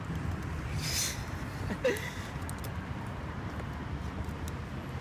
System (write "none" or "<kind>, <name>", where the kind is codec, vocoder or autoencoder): none